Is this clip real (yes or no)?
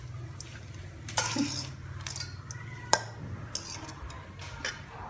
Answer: yes